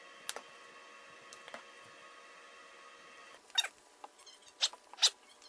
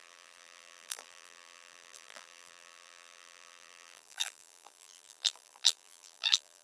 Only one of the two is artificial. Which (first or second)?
second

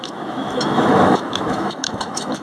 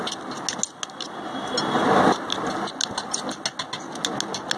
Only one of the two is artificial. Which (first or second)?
first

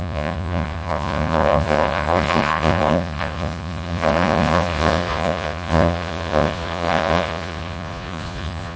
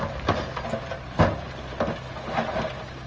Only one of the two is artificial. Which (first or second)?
first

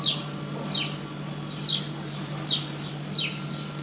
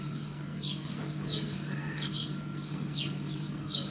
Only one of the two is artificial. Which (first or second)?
second